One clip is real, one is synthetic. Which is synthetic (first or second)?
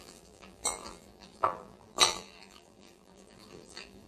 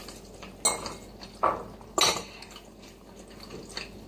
first